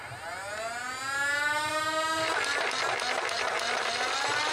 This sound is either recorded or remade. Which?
recorded